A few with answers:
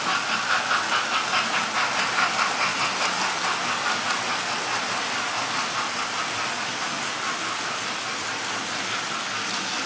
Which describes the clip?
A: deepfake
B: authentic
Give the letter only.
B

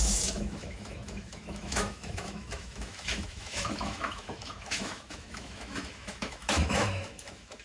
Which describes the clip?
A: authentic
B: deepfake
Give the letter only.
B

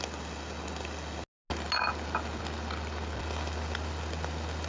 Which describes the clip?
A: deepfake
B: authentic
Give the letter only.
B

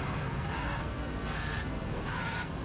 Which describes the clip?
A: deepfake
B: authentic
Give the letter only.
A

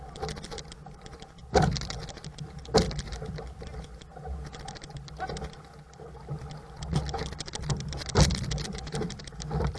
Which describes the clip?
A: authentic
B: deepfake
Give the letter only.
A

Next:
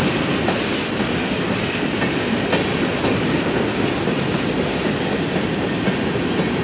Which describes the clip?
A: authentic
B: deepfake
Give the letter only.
A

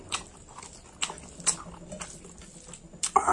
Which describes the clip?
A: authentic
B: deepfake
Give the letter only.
A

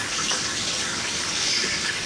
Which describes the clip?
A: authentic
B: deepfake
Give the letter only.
B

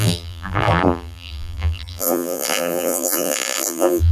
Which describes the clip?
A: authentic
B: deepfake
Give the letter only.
B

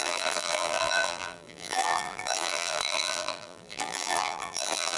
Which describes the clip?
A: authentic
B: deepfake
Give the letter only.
B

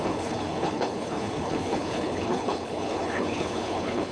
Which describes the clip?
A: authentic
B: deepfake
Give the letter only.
B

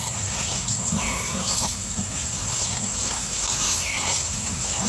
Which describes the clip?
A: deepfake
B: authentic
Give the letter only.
A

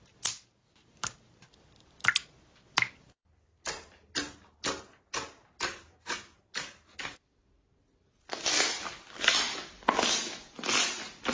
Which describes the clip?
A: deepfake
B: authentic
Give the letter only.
B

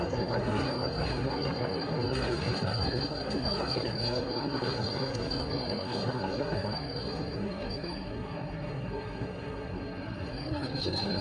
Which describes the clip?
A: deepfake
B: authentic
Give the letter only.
A